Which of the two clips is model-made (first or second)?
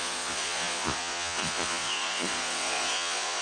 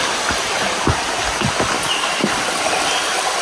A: first